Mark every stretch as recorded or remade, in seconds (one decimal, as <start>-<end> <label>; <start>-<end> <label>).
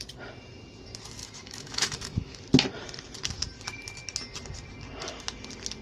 0.0-1.2 recorded; 1.2-2.4 remade; 2.4-5.8 recorded